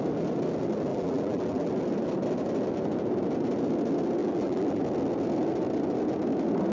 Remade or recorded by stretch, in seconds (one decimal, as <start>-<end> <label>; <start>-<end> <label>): 0.0-0.9 recorded; 0.9-1.7 remade; 1.7-4.2 recorded; 4.2-4.8 remade; 4.8-6.7 recorded

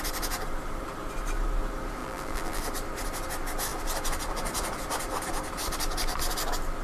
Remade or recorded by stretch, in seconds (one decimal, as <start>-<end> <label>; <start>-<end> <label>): 0.0-2.0 recorded; 2.0-2.6 remade; 2.6-6.8 recorded

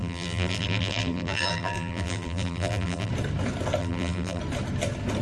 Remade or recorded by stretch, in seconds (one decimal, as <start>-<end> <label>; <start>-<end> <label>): 0.0-3.1 remade; 3.1-3.8 recorded; 3.8-4.4 remade; 4.4-5.2 recorded

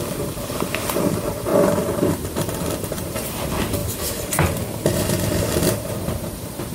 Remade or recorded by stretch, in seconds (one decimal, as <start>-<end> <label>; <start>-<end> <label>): 0.0-1.5 recorded; 1.5-3.1 remade; 3.1-6.7 recorded

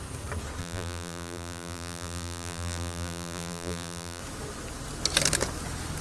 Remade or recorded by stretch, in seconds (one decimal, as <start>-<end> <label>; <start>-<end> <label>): 0.0-0.6 recorded; 0.6-4.2 remade; 4.2-6.0 recorded